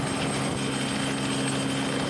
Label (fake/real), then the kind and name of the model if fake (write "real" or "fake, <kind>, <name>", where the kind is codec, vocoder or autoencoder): real